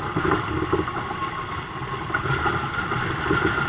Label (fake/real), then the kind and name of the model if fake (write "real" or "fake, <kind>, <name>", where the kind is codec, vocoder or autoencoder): real